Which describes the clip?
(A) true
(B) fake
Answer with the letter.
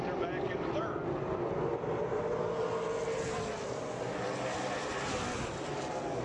B